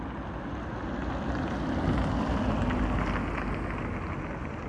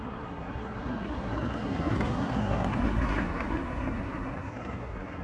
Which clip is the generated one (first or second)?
second